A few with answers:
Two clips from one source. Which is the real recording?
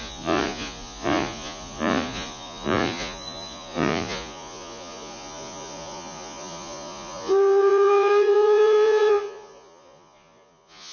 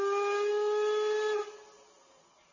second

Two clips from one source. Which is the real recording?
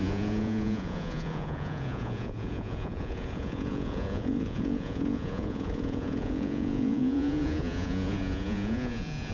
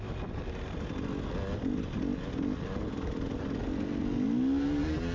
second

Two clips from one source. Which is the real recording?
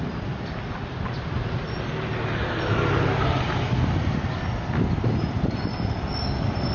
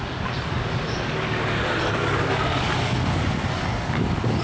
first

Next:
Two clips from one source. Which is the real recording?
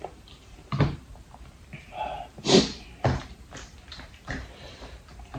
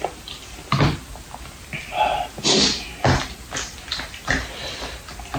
second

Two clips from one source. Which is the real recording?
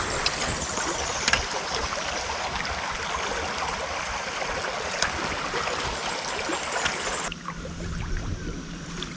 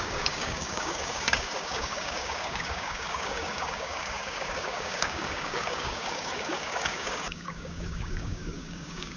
first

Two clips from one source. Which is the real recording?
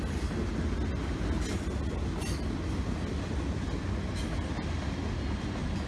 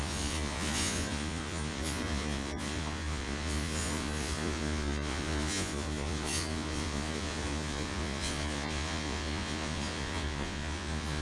first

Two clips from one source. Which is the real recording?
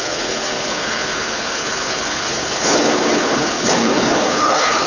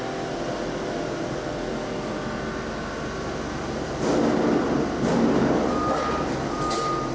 second